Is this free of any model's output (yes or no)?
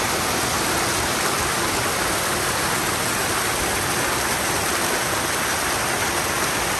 yes